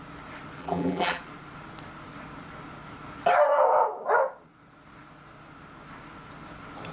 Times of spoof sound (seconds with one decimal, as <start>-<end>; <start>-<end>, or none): 0.6-1.2